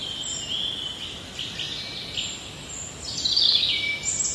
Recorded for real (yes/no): yes